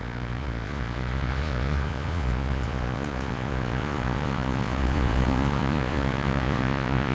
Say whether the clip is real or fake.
fake